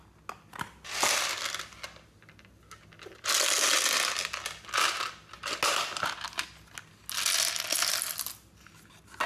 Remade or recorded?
recorded